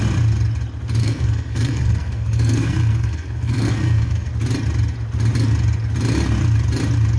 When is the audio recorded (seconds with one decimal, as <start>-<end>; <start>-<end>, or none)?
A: 0.0-1.0; 4.3-7.2